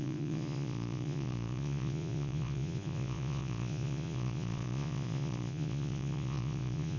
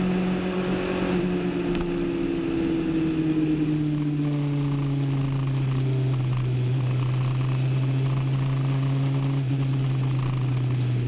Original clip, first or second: second